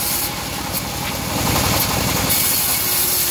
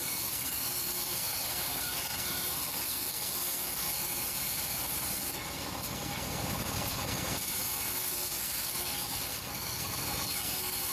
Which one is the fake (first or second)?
second